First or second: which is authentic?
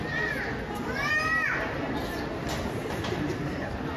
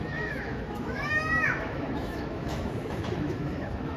first